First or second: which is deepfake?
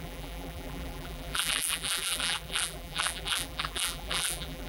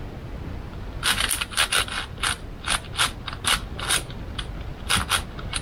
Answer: first